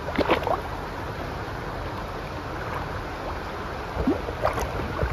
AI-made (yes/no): no